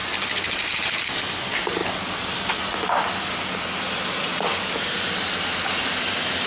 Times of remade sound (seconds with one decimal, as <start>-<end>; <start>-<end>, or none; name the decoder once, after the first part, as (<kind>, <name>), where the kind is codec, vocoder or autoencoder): 0.0-1.0 (vocoder, BigVGAN v2)